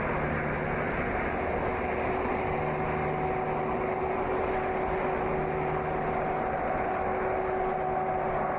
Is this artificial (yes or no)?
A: no